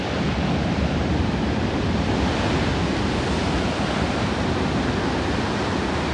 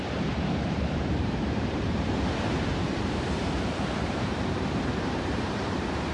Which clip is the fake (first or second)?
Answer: second